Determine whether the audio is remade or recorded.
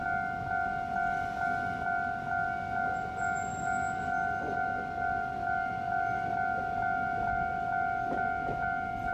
recorded